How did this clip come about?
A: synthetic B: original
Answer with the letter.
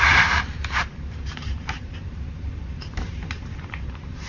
A